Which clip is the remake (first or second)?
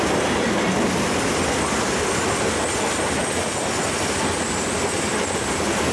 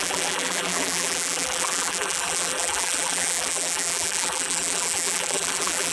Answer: second